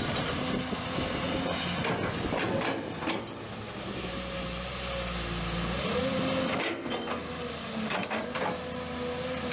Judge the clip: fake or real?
real